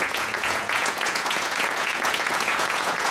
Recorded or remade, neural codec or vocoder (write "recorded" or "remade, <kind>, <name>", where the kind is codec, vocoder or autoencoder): remade, vocoder, Vocos